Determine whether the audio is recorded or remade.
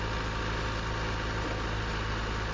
recorded